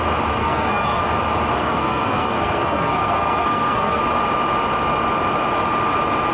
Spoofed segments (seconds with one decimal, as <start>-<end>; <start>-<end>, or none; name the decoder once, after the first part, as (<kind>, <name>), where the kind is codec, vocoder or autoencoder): 0.4-1.0 (codec, SNAC); 1.5-4.0